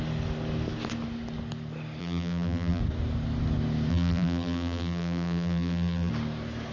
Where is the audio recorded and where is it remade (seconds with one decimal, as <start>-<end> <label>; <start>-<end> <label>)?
0.0-2.0 recorded; 2.0-2.8 remade; 2.8-3.9 recorded; 3.9-6.1 remade; 6.1-6.7 recorded